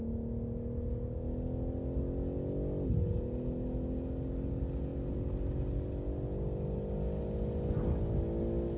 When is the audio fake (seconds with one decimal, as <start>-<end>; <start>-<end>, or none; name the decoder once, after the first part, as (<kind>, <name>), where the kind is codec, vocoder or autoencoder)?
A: none